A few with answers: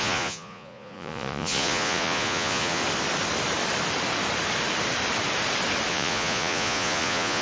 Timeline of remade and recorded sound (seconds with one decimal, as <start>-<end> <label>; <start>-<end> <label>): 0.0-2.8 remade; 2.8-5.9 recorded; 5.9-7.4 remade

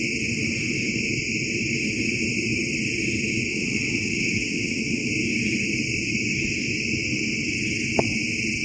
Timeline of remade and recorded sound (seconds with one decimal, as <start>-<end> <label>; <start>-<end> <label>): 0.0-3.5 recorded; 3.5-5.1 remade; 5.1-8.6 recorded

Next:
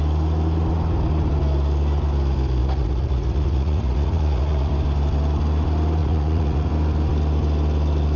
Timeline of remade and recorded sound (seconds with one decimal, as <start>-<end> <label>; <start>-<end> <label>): 0.0-2.6 recorded; 2.6-4.7 remade; 4.7-6.0 recorded; 6.0-6.7 remade; 6.7-8.2 recorded

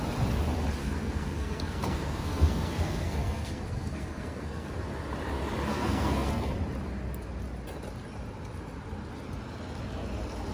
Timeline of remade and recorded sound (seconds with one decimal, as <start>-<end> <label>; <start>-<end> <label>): 0.0-0.8 recorded; 0.8-4.7 remade; 4.7-5.7 recorded; 5.7-6.5 remade; 6.5-10.5 recorded

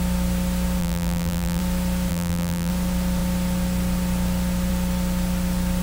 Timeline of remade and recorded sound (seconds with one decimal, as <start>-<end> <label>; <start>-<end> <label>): 0.0-0.8 recorded; 0.8-1.6 remade; 1.6-2.1 recorded; 2.1-2.7 remade; 2.7-5.8 recorded